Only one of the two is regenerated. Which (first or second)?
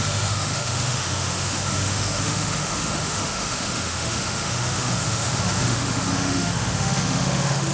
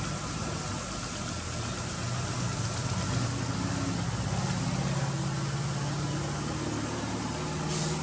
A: first